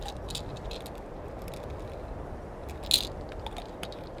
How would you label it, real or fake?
real